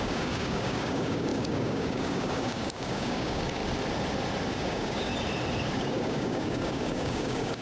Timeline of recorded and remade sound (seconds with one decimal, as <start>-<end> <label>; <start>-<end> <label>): 0.0-3.6 remade; 3.6-4.5 recorded; 4.5-5.1 remade; 5.1-5.8 recorded; 5.8-7.6 remade